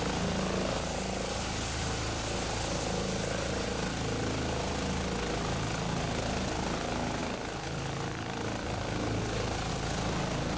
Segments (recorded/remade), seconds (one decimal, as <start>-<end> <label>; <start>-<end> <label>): 0.0-10.6 recorded

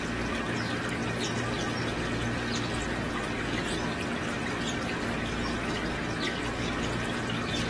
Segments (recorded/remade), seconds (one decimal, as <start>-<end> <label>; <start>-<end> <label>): 0.0-7.7 recorded

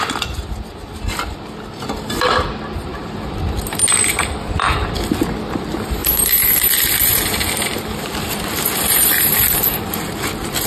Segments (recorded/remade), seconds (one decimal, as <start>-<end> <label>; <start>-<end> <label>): 0.0-6.0 recorded; 6.0-10.1 remade; 10.1-10.7 recorded